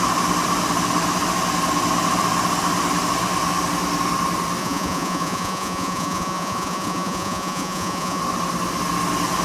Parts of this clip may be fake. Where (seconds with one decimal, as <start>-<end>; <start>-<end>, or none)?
4.6-8.2